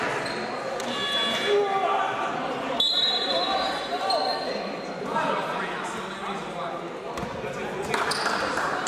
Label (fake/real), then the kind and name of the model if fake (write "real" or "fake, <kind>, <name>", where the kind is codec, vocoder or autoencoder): real